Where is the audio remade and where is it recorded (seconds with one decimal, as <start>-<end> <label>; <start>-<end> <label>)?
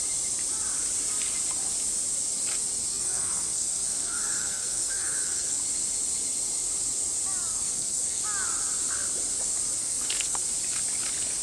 0.0-2.9 recorded; 2.9-5.6 remade; 5.6-7.5 recorded; 7.5-8.2 remade; 8.2-9.8 recorded; 9.8-10.4 remade; 10.4-11.4 recorded